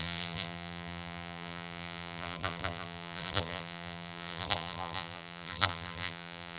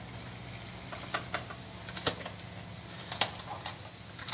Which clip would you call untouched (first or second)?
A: second